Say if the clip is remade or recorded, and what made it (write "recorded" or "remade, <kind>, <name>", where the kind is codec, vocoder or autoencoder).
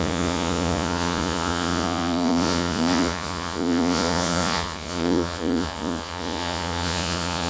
remade, vocoder, Vocos